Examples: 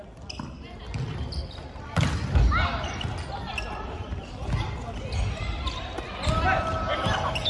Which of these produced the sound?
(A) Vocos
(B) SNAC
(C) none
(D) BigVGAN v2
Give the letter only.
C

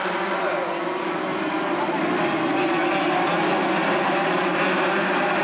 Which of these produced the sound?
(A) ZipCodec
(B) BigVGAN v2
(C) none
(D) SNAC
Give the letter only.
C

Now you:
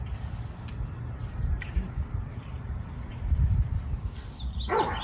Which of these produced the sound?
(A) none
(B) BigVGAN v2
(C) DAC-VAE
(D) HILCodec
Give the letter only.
B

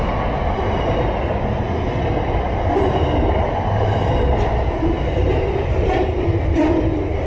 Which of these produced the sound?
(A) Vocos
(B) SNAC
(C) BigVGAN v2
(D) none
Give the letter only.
D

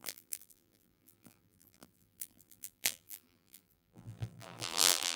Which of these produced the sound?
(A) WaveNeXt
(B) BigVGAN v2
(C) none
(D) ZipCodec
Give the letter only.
B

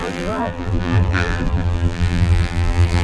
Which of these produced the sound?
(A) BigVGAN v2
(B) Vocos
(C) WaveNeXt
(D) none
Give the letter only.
A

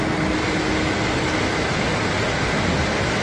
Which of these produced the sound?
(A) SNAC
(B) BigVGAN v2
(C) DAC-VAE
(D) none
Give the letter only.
D